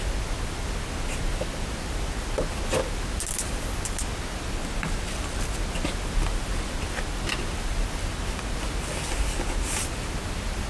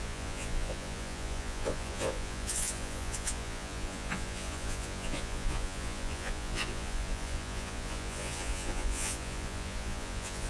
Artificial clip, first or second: second